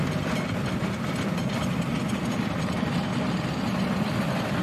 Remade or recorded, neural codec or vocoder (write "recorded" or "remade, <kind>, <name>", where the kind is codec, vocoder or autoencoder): remade, vocoder, BigVGAN v2